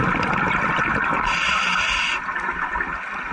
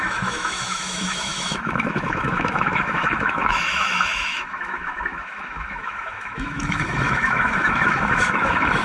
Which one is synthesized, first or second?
second